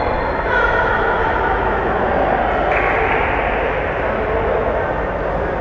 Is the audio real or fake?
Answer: real